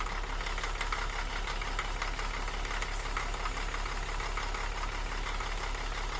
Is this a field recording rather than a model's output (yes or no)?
yes